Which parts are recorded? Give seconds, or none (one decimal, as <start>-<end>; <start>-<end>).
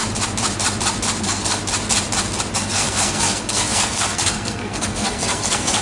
0.0-1.2; 1.6-2.6